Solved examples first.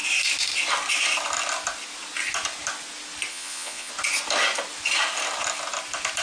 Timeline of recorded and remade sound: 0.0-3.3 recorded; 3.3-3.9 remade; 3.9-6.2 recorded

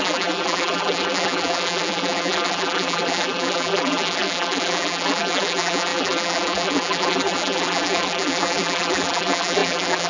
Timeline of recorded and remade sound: 0.0-10.1 remade

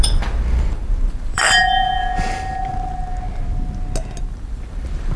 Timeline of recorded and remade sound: 0.0-2.1 remade; 2.1-4.2 recorded; 4.2-5.2 remade